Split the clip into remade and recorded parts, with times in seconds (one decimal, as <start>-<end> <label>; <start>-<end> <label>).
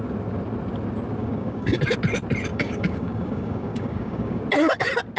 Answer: 0.0-1.2 recorded; 1.2-1.8 remade; 1.8-2.5 recorded; 2.5-4.4 remade; 4.4-5.2 recorded